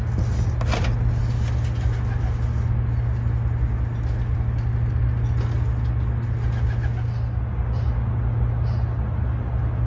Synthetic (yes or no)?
no